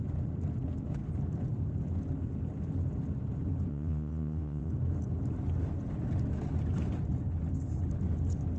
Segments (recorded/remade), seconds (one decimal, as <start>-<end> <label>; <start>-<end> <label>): 0.0-3.7 recorded; 3.7-4.7 remade; 4.7-8.6 recorded